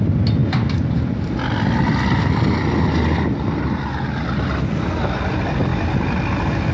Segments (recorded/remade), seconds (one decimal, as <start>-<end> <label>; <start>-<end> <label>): 0.0-6.7 recorded